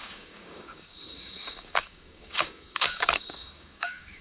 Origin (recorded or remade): remade